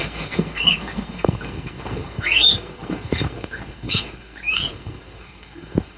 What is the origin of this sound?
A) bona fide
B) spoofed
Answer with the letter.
B